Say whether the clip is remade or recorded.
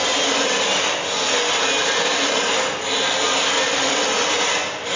recorded